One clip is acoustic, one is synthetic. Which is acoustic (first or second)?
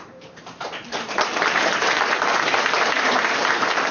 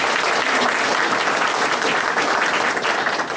second